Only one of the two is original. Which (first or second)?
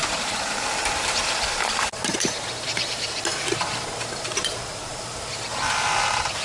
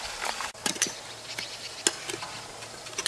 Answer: second